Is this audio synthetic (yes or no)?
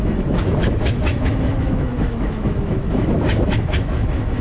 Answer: yes